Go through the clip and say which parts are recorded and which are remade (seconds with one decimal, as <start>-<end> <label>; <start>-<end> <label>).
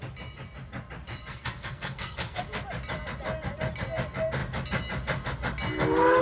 0.0-1.3 recorded; 1.3-2.4 remade; 2.4-6.2 recorded